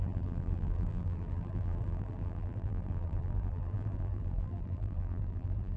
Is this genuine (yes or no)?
no